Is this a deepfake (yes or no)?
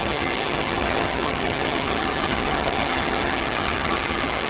yes